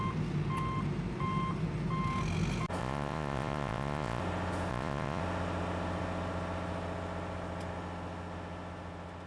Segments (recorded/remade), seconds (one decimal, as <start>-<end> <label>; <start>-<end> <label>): 0.0-2.8 recorded; 2.8-4.2 remade; 4.2-4.7 recorded; 4.7-5.2 remade; 5.2-9.3 recorded